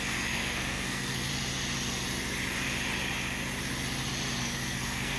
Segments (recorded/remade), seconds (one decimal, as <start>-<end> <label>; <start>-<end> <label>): 0.0-1.3 remade; 1.3-4.4 recorded; 4.4-5.2 remade